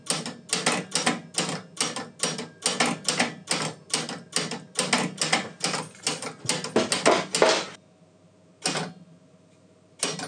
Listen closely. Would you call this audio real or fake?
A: real